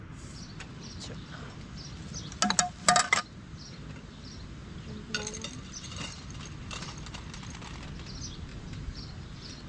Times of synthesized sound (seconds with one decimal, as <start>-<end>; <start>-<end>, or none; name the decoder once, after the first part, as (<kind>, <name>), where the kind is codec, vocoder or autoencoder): 8.5-9.0 (vocoder, BigVGAN v2)